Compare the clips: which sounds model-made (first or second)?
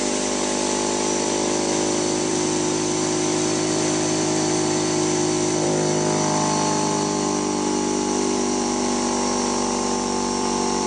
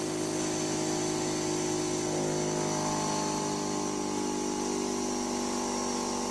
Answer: first